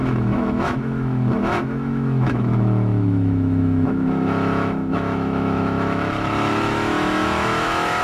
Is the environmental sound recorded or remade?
remade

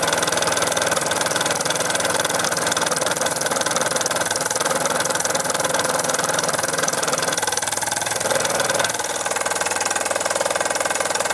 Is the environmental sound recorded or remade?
remade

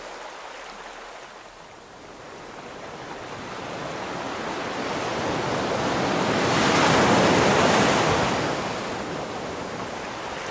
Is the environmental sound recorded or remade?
recorded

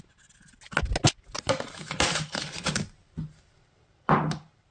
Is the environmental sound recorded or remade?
recorded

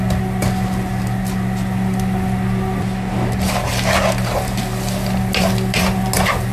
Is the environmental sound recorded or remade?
recorded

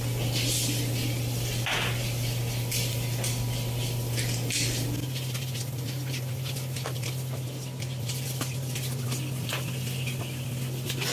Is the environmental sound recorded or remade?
recorded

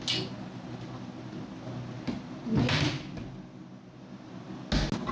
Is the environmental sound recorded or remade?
recorded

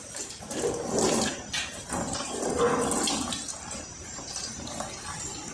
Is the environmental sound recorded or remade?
remade